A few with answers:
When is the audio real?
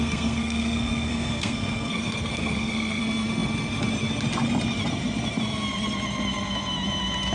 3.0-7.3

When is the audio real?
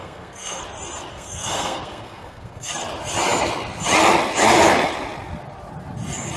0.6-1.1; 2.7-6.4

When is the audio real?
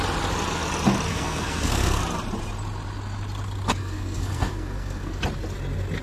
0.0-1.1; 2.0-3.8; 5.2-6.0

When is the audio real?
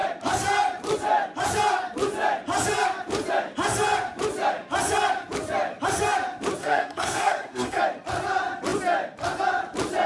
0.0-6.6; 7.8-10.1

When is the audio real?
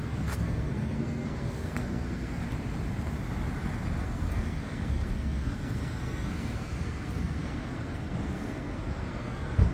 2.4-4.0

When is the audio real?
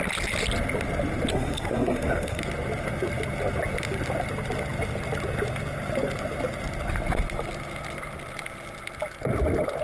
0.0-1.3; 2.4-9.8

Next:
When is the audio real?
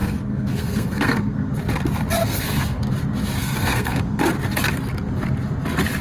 1.5-2.2; 2.9-3.4; 4.2-6.0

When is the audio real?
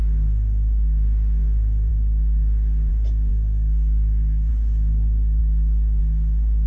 0.0-3.3; 4.5-6.7